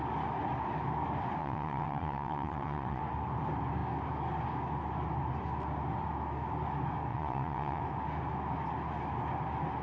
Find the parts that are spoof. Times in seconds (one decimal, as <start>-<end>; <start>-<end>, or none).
1.4-3.0; 7.1-7.8